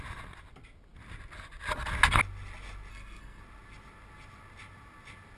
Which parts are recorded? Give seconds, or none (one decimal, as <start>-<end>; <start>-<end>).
0.0-2.9; 3.4-5.4